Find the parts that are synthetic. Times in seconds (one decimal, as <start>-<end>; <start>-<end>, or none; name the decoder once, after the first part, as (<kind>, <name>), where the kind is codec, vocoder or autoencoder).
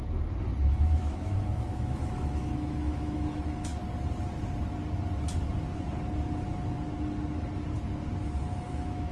0.6-3.7 (autoencoder, DAC-VAE); 8.4-9.1